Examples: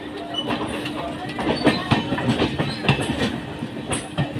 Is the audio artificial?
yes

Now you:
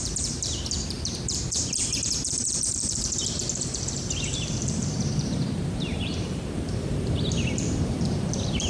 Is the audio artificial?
yes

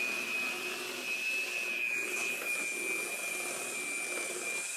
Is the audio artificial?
no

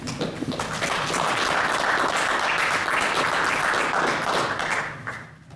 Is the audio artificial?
no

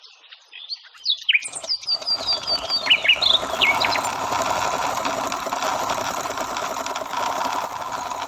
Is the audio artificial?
no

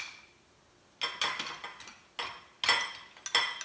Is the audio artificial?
no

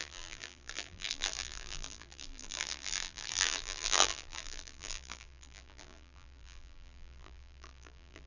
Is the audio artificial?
yes